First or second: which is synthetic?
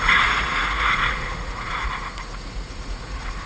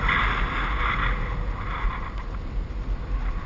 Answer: first